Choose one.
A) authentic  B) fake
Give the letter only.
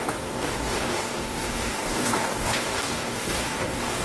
B